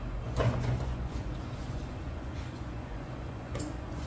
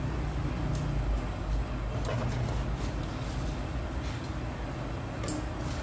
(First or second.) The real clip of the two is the second